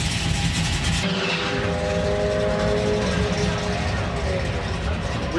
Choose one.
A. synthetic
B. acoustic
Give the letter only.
B